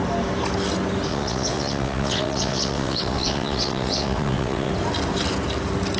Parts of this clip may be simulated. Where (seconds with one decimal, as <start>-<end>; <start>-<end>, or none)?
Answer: 1.1-4.7